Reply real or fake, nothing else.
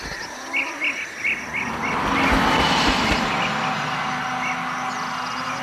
real